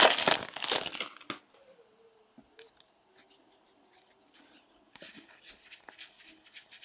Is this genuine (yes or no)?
yes